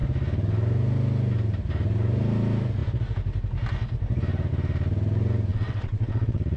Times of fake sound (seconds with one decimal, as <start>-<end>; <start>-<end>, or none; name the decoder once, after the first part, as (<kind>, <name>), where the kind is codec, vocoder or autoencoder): 5.5-6.6 (vocoder, WaveNeXt)